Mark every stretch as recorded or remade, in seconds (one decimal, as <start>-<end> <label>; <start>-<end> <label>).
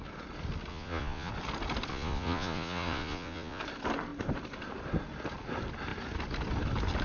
0.0-0.7 recorded; 0.7-1.3 remade; 1.3-1.9 recorded; 1.9-3.6 remade; 3.6-7.0 recorded